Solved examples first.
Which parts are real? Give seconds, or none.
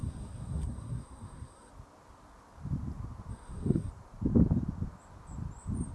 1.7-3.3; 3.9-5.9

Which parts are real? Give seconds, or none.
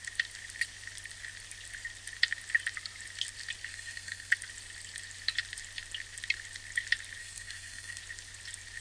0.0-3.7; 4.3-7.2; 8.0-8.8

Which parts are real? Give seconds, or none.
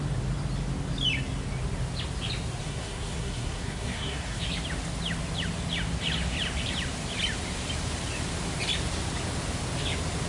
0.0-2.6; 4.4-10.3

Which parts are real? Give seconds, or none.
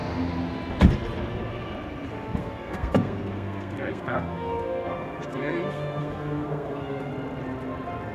0.0-2.4; 7.1-8.1